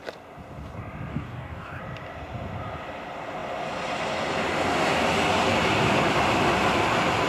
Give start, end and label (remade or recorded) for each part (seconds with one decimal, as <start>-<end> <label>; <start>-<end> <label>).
0.0-1.1 recorded; 1.1-1.8 remade; 1.8-7.3 recorded